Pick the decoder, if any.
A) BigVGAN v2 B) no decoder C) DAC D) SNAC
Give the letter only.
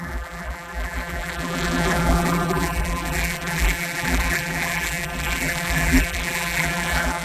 A